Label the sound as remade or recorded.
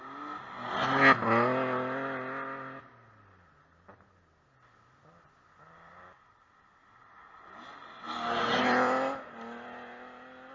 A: recorded